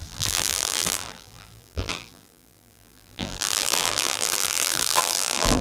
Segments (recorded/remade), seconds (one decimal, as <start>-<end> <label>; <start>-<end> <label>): 0.0-5.6 remade